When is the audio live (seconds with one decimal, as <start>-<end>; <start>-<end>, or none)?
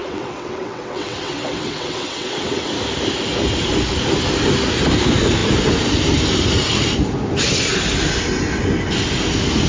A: 2.7-9.7